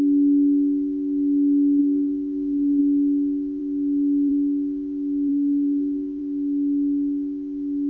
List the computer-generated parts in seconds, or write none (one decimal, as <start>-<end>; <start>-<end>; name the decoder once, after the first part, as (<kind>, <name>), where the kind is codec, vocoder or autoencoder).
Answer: 1.8-2.8 (codec, SNAC); 5.3-6.2